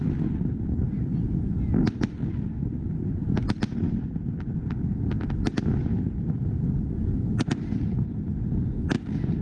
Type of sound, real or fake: real